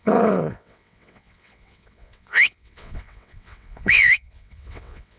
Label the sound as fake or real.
fake